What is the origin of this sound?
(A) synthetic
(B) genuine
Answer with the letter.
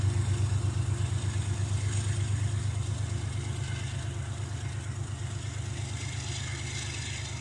B